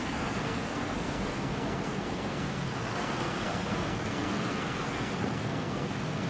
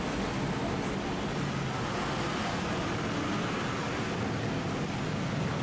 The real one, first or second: second